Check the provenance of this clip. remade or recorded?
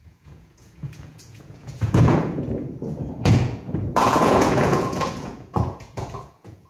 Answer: remade